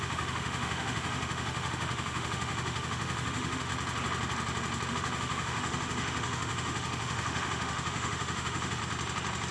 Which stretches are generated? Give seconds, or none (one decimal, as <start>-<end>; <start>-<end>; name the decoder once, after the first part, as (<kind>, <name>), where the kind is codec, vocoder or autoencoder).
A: 0.0-3.7 (autoencoder, DAC-VAE); 4.9-8.8